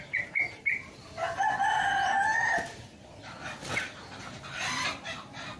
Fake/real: real